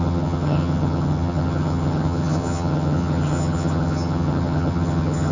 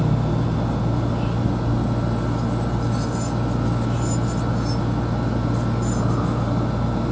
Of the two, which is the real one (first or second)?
second